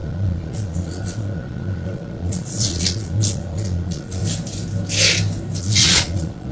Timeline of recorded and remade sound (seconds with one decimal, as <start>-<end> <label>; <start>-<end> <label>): 0.0-4.2 remade; 4.2-5.6 recorded; 5.6-6.5 remade